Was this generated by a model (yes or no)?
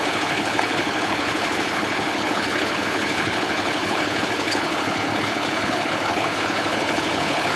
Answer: yes